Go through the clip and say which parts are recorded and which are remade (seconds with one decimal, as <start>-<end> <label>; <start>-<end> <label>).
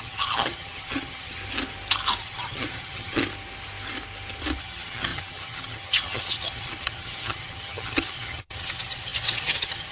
0.0-1.4 remade; 1.4-2.2 recorded; 2.2-3.2 remade; 3.2-4.6 recorded; 4.6-9.9 remade